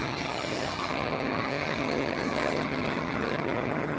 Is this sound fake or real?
fake